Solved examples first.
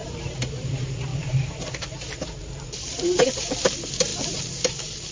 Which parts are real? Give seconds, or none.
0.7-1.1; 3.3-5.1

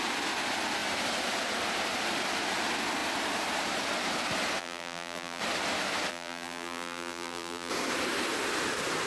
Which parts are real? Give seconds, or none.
0.0-4.6; 5.4-6.1; 7.7-9.1

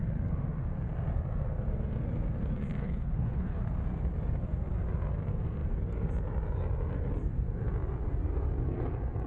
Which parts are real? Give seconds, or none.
0.0-2.8; 3.6-9.3

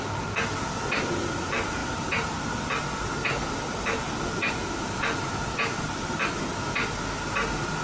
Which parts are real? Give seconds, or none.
0.0-7.8